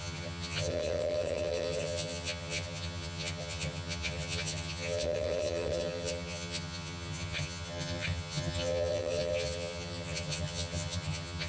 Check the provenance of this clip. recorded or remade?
remade